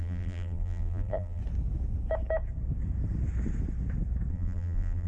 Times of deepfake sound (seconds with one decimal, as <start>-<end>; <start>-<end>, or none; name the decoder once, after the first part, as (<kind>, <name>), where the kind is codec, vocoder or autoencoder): 0.0-1.4 (vocoder, BigVGAN v2); 4.3-5.1